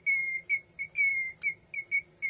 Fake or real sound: real